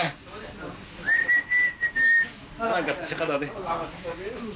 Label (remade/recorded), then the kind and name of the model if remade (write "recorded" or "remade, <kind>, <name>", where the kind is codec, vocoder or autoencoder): recorded